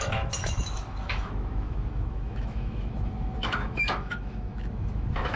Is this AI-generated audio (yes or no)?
yes